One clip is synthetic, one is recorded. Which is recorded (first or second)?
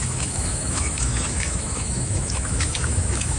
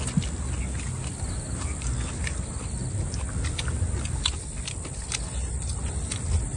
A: second